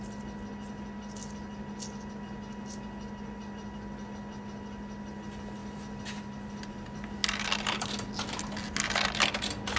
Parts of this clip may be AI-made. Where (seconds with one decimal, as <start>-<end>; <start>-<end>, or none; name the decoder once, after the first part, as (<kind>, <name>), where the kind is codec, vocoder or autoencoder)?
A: none